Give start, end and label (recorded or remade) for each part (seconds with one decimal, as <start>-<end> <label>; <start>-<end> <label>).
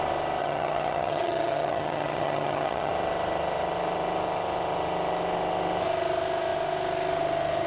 0.0-0.4 recorded; 0.4-2.9 remade; 2.9-7.7 recorded